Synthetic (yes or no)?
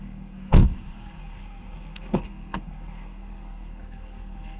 yes